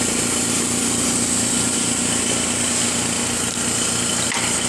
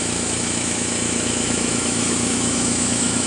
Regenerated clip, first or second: second